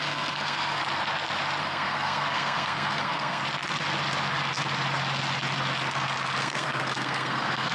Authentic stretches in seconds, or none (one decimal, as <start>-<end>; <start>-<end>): 0.8-1.6; 3.4-6.4